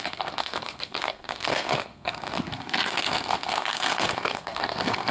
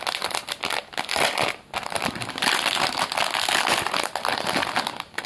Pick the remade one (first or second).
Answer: first